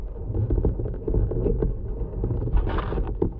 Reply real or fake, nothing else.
real